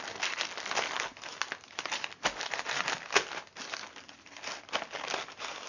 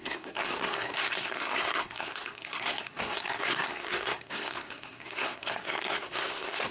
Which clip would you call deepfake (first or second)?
second